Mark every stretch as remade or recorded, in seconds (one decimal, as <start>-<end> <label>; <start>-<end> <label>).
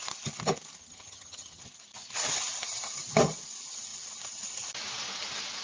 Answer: 0.0-0.8 recorded; 0.8-1.6 remade; 1.6-5.6 recorded